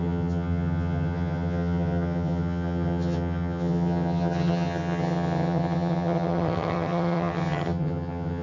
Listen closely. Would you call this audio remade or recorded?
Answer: remade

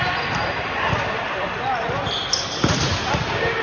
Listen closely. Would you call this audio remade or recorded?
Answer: remade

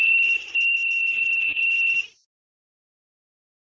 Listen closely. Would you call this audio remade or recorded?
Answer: recorded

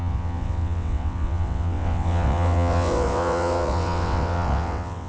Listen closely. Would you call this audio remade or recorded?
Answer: remade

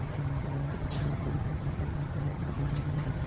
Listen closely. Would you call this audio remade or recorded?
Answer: remade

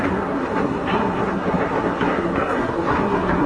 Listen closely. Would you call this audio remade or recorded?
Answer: remade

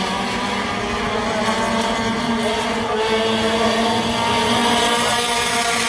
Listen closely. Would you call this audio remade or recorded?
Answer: recorded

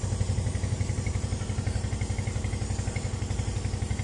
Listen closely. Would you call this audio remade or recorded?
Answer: recorded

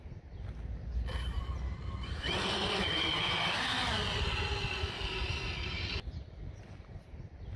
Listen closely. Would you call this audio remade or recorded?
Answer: recorded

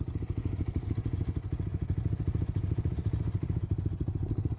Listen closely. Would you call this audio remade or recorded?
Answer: recorded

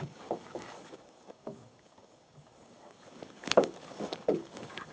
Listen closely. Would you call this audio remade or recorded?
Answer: remade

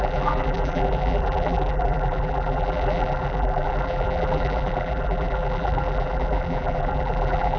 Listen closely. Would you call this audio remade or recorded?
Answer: remade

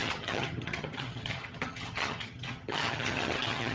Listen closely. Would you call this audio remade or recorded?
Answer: remade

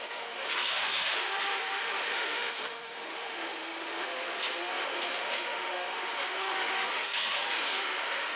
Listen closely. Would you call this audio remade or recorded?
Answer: remade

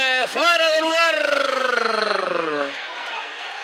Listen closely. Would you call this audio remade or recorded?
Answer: remade